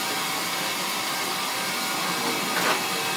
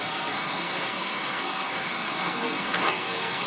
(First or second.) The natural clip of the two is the first